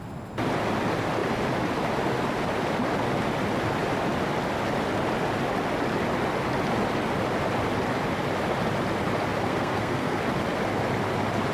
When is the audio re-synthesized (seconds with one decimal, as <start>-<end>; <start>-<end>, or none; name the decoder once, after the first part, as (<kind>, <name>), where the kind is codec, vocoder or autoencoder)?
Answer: 9.5-10.2 (codec, SNAC)